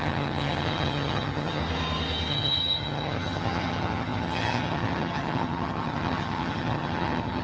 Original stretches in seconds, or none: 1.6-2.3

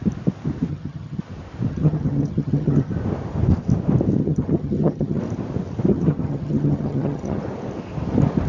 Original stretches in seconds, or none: 0.0-0.7; 1.2-1.7; 2.9-4.2; 5.2-5.9; 7.4-8.5

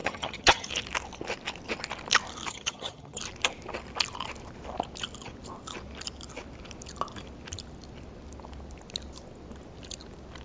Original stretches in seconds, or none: 0.7-2.5; 3.2-10.4

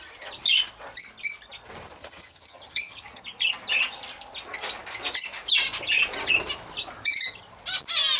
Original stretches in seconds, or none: 0.0-2.0; 3.2-8.2